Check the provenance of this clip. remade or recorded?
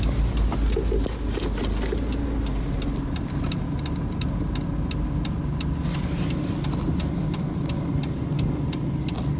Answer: recorded